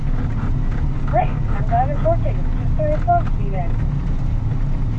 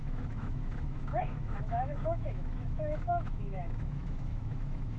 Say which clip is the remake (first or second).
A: second